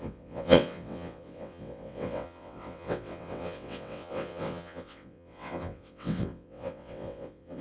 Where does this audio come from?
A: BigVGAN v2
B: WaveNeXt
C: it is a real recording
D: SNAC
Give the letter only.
B